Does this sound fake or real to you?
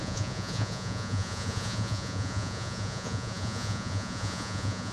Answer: fake